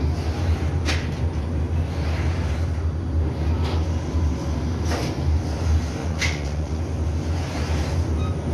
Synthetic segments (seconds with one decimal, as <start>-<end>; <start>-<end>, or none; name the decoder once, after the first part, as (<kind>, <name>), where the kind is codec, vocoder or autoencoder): 6.0-6.8 (vocoder, Vocos)

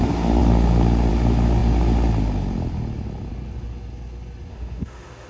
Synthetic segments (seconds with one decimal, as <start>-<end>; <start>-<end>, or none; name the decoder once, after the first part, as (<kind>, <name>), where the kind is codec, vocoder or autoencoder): 4.5-5.3 (autoencoder, DAC-VAE)

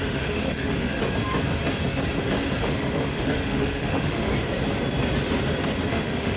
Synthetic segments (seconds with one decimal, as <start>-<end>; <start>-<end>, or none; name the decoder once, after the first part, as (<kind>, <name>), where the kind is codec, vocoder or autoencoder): 0.0-1.0 (autoencoder, DAC-VAE); 2.6-4.3; 5.9-6.4

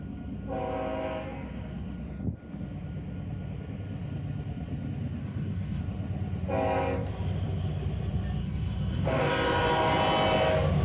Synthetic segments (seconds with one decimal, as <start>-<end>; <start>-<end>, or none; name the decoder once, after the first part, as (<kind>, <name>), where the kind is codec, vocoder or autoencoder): 5.2-5.8 (codec, DAC); 8.4-9.3

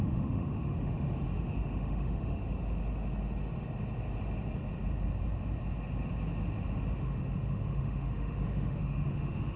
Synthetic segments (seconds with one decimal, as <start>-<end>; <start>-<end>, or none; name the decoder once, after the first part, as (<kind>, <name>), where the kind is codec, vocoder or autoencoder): 0.0-2.4 (autoencoder, DAC-VAE); 6.9-9.6

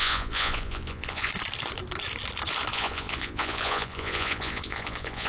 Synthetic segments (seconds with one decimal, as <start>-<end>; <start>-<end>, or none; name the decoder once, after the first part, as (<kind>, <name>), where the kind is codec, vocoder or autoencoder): 0.0-1.3 (vocoder, Vocos); 2.7-5.3